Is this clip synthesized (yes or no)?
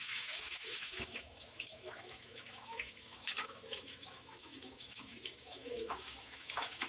yes